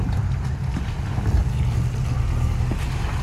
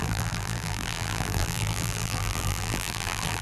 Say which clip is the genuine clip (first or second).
first